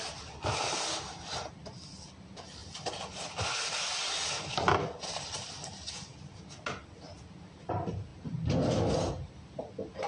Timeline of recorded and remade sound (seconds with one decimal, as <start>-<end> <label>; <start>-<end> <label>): 0.0-10.1 recorded